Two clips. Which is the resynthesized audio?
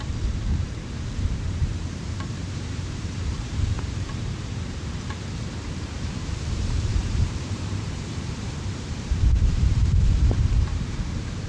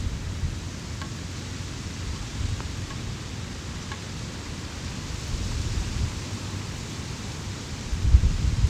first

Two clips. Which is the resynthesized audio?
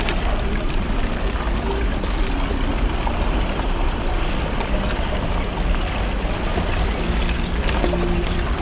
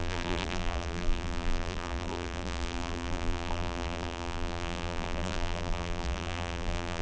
second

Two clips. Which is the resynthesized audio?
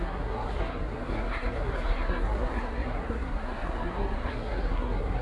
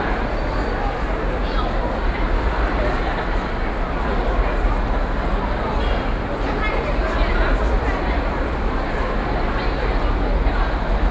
first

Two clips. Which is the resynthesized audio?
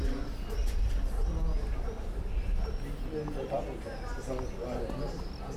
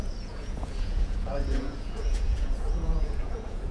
second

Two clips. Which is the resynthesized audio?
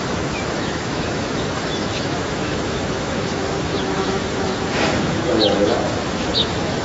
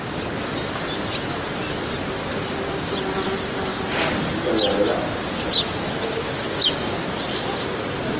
first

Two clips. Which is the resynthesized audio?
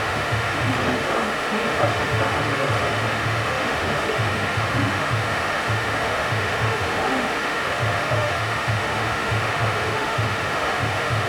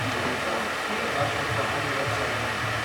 first